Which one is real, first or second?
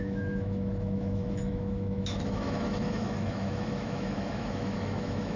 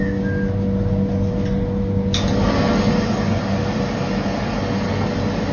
second